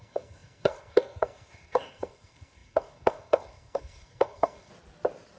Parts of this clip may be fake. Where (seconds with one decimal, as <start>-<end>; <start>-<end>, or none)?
0.0-4.7